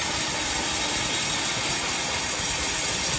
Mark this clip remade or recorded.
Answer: remade